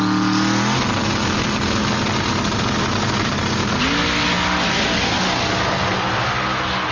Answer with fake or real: real